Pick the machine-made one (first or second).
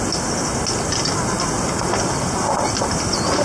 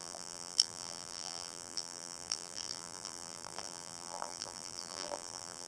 second